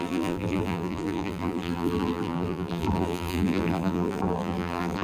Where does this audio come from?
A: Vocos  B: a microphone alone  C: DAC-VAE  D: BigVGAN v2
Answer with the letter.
D